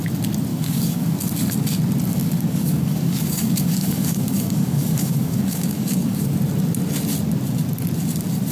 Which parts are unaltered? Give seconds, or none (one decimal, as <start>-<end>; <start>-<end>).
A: 0.0-0.5; 1.1-2.1; 6.2-8.5